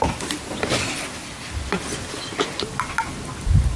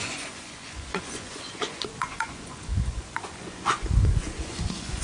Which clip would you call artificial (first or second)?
second